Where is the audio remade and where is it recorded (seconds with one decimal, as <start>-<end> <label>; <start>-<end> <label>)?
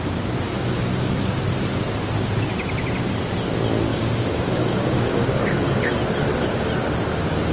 0.0-3.9 recorded; 3.9-5.9 remade; 5.9-7.5 recorded